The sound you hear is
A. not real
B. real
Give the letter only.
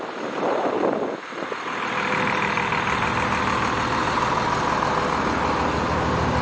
B